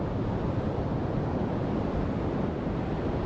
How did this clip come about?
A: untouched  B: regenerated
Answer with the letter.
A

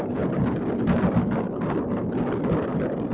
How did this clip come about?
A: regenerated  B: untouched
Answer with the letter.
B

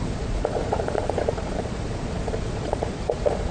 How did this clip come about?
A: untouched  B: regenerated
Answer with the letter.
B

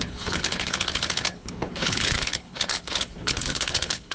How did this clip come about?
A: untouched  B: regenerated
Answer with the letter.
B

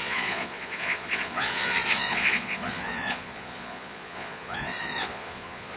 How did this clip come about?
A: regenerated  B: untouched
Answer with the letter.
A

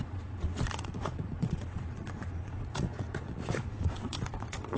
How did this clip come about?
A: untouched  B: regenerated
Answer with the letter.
B